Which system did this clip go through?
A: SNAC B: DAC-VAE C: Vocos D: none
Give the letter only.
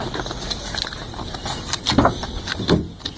D